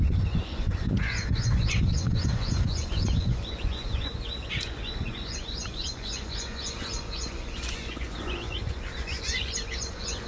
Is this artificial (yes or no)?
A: yes